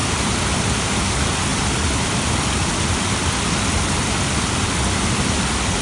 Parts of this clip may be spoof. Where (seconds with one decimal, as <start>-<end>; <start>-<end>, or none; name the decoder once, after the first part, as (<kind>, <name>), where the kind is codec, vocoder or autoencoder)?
none